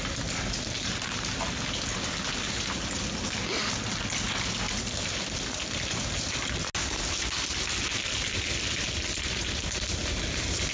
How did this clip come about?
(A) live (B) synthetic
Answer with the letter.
A